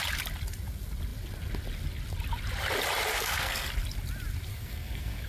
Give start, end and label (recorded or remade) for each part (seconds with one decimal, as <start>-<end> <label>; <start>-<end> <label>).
0.0-3.1 recorded; 3.1-3.7 remade; 3.7-4.5 recorded; 4.5-5.3 remade